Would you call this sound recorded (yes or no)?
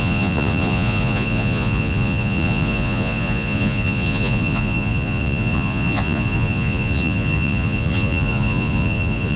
no